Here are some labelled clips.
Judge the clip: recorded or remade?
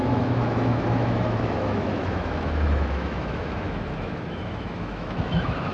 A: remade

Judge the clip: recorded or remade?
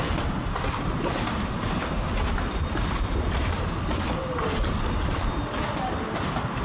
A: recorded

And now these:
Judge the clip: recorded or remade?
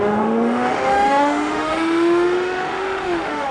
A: remade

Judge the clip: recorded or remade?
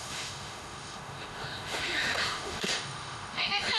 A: remade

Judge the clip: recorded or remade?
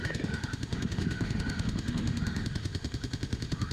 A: remade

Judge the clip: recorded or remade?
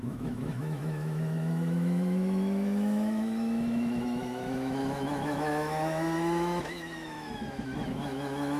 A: remade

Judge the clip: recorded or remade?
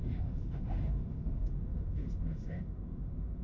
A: remade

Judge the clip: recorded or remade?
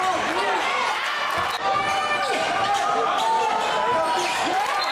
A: recorded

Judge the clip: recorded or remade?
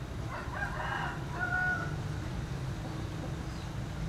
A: recorded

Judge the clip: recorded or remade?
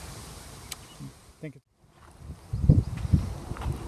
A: recorded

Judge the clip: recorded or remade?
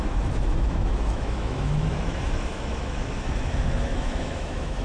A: remade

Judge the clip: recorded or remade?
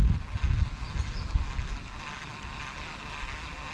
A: recorded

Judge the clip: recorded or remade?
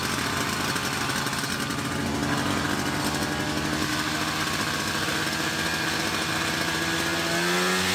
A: recorded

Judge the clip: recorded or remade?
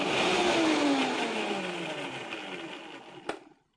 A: recorded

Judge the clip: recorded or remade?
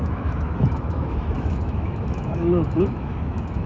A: remade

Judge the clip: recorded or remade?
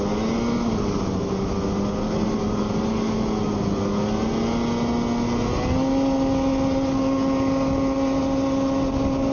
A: recorded